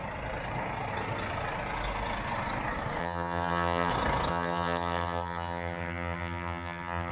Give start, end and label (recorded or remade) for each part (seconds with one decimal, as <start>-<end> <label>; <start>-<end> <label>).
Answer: 0.0-3.0 recorded; 3.0-3.9 remade; 3.9-4.3 recorded; 4.3-7.1 remade